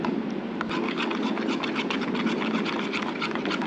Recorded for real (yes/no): yes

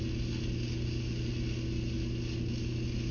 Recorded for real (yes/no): yes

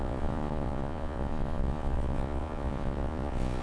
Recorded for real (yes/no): no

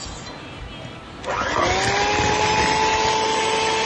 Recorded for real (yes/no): yes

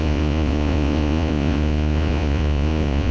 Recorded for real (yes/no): no